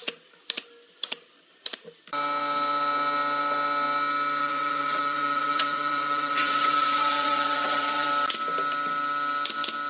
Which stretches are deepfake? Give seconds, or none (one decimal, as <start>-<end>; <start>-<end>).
4.4-8.1